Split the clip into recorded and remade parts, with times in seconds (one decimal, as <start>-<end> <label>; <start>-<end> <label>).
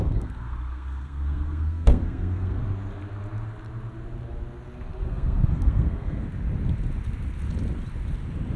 0.0-2.6 remade; 2.6-5.0 recorded; 5.0-6.2 remade; 6.2-8.6 recorded